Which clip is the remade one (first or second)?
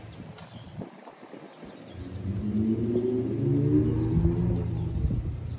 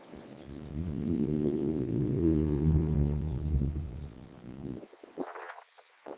second